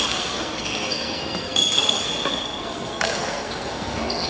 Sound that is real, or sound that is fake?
fake